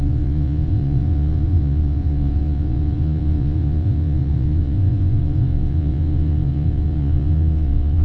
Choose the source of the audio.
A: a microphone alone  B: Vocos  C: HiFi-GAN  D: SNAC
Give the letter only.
B